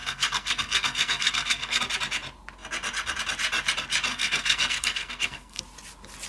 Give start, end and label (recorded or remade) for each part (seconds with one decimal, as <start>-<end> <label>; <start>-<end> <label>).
0.0-1.8 remade; 1.8-4.1 recorded; 4.1-5.6 remade; 5.6-6.3 recorded